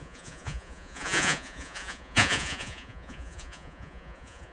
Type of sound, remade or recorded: remade